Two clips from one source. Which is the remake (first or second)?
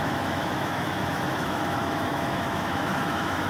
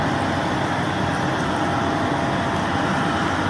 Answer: first